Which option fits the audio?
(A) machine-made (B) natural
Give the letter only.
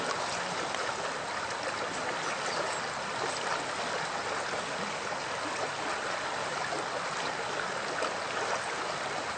B